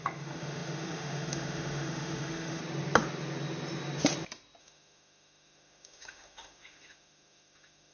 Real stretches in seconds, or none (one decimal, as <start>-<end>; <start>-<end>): 2.6-4.6